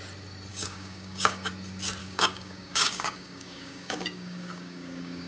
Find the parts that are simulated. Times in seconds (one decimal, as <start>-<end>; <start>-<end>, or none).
0.5-1.5; 2.0-5.3